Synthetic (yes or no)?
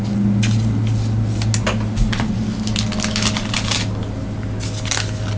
no